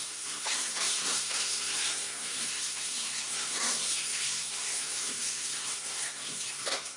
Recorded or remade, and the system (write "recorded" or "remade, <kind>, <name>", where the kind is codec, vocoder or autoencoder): remade, codec, SNAC